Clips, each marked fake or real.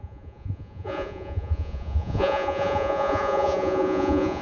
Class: fake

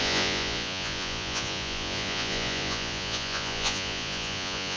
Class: fake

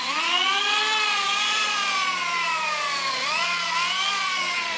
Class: fake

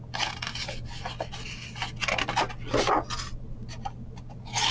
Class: real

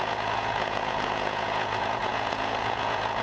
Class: fake